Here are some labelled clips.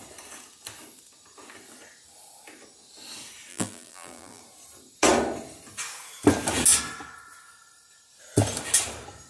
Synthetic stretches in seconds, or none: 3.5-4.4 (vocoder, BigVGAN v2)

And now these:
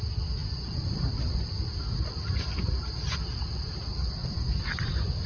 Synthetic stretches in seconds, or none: none

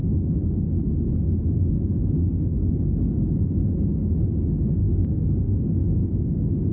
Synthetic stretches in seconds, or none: 2.2-2.7 (autoencoder, DAC-VAE); 4.8-5.6

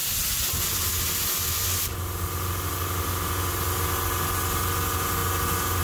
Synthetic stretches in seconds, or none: none

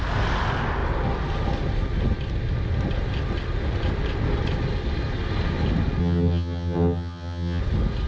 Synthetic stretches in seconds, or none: 6.0-7.6 (vocoder, HiFi-GAN)

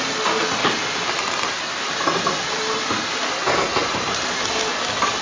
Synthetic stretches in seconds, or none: 0.6-2.4 (vocoder, BigVGAN v2); 3.8-4.5